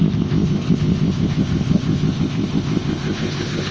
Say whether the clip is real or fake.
fake